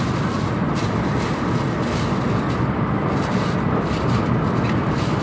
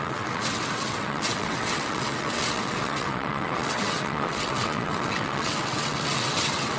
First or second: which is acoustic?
first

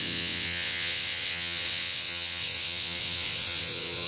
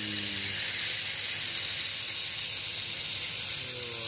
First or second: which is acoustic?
second